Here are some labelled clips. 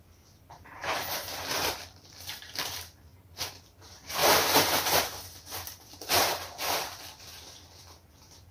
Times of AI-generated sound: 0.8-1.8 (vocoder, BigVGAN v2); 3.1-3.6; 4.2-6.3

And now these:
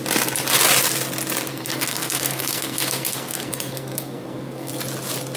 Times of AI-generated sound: 1.5-4.7 (codec, SNAC)

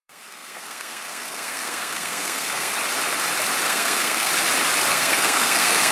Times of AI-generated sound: 0.0-2.7 (codec, SNAC); 3.6-4.3; 4.9-5.9

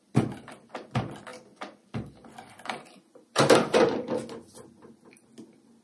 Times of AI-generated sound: 1.3-4.2 (vocoder, BigVGAN v2)

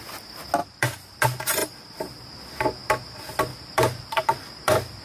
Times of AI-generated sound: 0.6-1.2 (vocoder, BigVGAN v2); 3.5-5.0

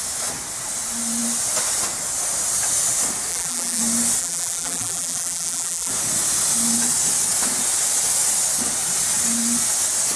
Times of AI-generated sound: 3.3-3.8 (vocoder, BigVGAN v2); 4.2-5.9